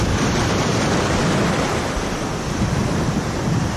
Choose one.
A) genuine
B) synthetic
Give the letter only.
B